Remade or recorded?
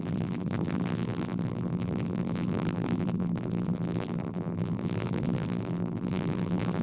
remade